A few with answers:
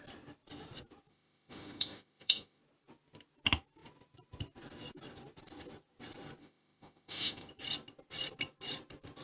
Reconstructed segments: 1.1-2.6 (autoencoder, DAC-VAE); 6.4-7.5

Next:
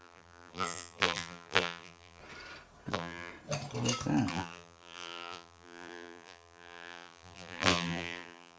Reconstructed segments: 0.0-2.2 (vocoder, BigVGAN v2); 2.9-3.3; 4.3-8.6